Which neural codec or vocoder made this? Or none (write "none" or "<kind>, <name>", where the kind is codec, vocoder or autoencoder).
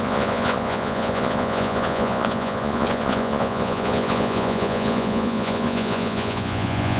vocoder, Vocos